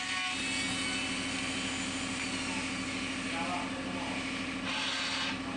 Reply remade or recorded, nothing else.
recorded